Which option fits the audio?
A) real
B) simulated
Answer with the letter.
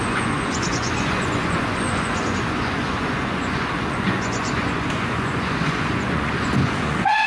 B